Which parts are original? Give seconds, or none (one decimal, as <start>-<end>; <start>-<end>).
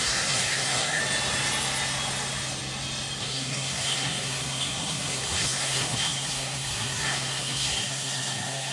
1.0-3.2